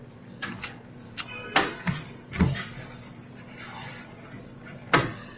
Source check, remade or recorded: remade